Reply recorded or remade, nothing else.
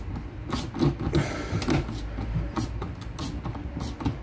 recorded